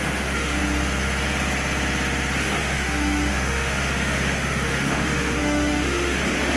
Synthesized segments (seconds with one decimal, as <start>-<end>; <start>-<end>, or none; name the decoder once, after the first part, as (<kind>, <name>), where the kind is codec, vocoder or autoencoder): 0.0-0.6 (autoencoder, DAC-VAE); 2.4-6.6